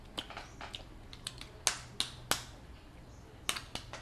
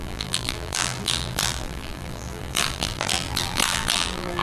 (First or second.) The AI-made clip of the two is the second